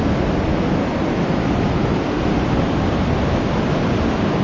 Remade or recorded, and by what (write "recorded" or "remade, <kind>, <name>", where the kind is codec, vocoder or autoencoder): recorded